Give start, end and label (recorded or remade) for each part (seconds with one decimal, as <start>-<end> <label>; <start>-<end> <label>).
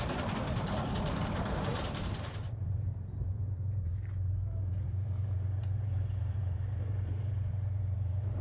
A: 0.0-8.4 remade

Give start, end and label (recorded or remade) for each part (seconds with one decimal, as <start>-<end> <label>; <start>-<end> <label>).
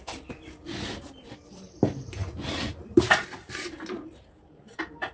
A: 0.0-5.1 remade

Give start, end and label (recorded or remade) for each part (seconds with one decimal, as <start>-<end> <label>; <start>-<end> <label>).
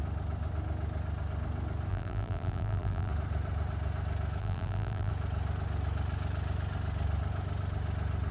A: 0.0-1.9 recorded; 1.9-3.1 remade; 3.1-4.4 recorded; 4.4-5.1 remade; 5.1-8.3 recorded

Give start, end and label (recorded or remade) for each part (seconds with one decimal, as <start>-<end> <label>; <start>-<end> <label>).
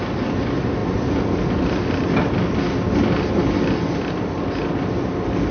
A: 0.0-5.5 recorded